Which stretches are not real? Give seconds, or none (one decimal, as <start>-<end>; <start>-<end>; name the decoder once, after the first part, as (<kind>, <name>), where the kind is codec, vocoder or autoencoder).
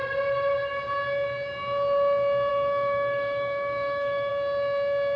2.5-4.3 (autoencoder, DAC-VAE)